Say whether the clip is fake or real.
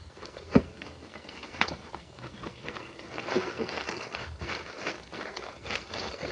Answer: fake